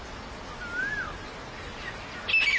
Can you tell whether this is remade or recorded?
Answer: recorded